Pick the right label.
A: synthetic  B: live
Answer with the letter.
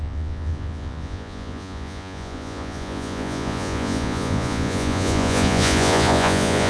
A